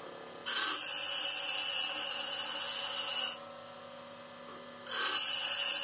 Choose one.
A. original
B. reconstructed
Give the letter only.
A